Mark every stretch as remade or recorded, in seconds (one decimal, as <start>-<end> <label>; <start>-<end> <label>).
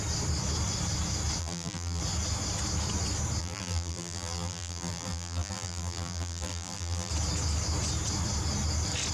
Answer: 0.0-1.4 recorded; 1.4-2.0 remade; 2.0-3.4 recorded; 3.4-7.1 remade; 7.1-9.1 recorded